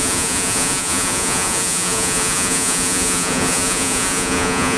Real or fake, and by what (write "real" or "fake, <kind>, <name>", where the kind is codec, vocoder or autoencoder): fake, vocoder, Vocos